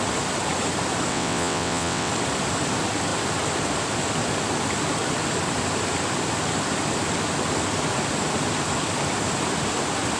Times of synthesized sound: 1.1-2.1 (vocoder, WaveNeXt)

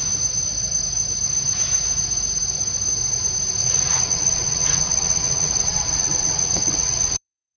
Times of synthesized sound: 3.6-7.6 (vocoder, WaveNeXt)

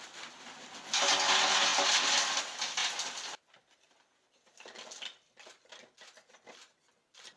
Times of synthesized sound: none

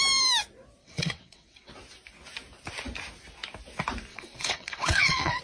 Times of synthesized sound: 0.8-1.7 (vocoder, WaveNeXt); 4.1-5.4

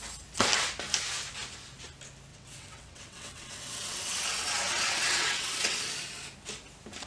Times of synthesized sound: 2.3-5.8 (vocoder, WaveNeXt)